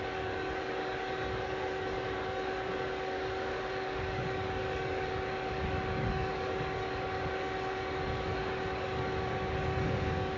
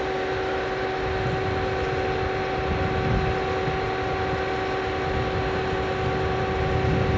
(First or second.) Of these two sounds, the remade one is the first